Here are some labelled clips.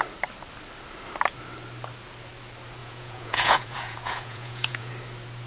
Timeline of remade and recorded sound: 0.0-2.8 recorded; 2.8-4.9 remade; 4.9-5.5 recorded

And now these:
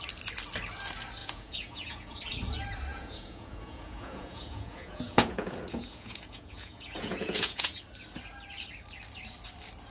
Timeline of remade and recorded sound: 0.0-1.2 recorded; 1.2-2.2 remade; 2.2-2.9 recorded; 2.9-7.8 remade; 7.8-9.9 recorded

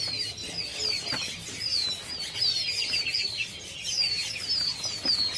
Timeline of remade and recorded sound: 0.0-5.4 recorded

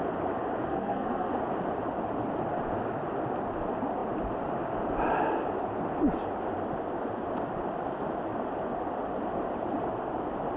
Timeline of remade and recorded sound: 0.0-0.7 recorded; 0.7-1.3 remade; 1.3-10.6 recorded

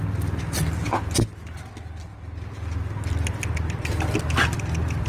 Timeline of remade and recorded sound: 0.0-5.1 recorded